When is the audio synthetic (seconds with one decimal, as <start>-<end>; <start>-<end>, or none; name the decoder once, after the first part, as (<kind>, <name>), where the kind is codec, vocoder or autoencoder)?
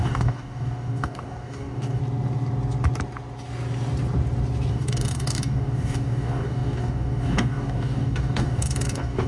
0.0-2.0 (codec, DAC); 4.7-9.3